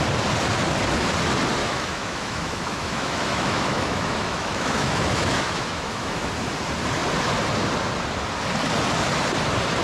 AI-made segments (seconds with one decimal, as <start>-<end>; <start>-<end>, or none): 1.6-6.3